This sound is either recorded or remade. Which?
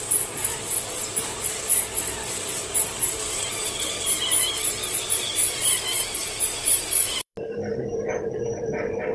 remade